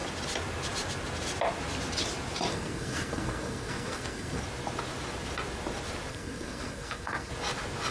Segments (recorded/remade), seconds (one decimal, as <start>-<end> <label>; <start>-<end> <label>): 0.0-2.5 recorded; 2.5-4.4 remade; 4.4-6.1 recorded; 6.1-7.3 remade; 7.3-7.9 recorded